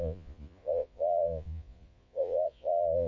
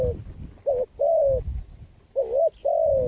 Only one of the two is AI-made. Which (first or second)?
first